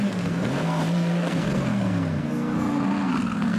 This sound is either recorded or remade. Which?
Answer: remade